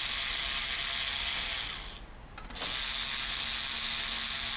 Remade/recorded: recorded